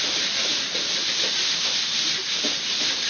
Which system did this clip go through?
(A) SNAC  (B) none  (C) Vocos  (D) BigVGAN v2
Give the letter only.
D